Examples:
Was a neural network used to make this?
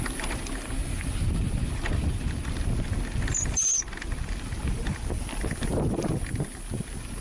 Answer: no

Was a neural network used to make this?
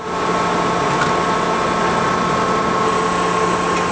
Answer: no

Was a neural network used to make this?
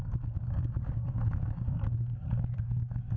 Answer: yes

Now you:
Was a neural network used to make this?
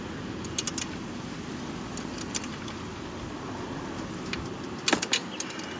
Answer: no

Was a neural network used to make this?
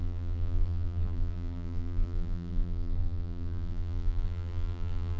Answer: yes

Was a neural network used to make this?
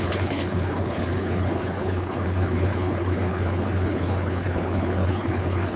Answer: yes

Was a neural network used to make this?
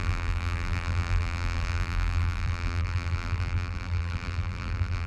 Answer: yes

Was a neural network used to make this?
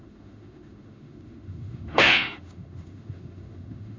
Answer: yes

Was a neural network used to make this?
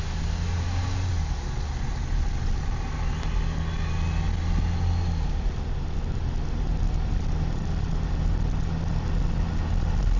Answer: no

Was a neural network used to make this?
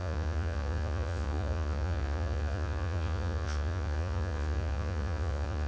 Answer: yes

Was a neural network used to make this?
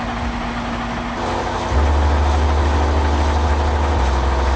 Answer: no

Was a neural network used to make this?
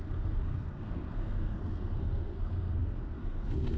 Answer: yes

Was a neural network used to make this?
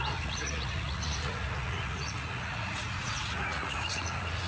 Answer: yes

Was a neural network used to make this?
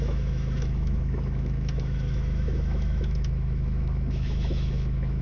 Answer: yes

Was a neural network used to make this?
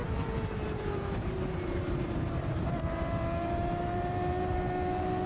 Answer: yes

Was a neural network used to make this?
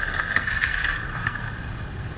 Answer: yes